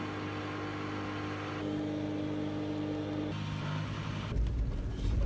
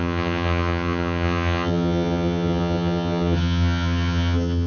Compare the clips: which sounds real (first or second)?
first